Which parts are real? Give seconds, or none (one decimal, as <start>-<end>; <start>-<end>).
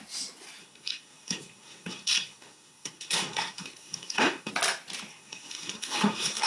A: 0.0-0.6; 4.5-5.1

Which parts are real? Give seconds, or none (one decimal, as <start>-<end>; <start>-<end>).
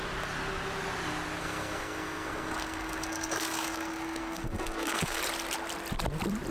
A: 0.0-1.4; 5.2-6.5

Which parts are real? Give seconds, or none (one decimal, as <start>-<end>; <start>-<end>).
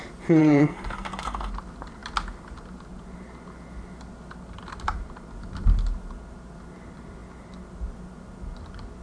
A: 0.0-0.4; 1.5-9.0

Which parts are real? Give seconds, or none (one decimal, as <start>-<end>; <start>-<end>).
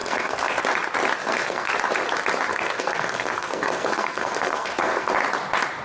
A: 0.6-1.2; 1.7-2.5; 5.1-5.8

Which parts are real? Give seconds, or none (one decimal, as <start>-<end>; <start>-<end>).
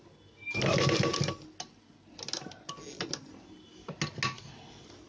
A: 0.0-5.1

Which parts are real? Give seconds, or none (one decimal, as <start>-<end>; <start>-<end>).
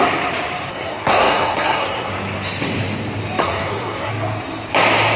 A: 0.0-0.7; 2.1-3.4; 4.1-5.2